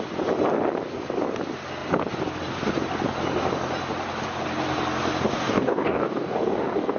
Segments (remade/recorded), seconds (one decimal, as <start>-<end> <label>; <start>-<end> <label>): 0.0-5.3 recorded; 5.3-7.0 remade